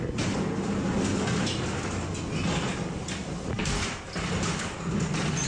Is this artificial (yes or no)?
no